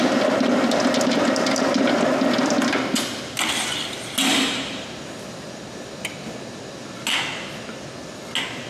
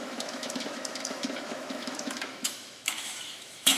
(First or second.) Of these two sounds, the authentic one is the first